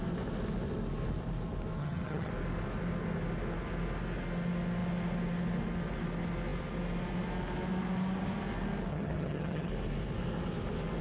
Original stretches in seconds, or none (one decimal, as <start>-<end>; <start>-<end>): 0.0-1.8; 2.3-8.9; 9.7-11.0